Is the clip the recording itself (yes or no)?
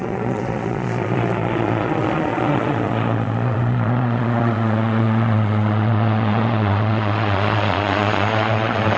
no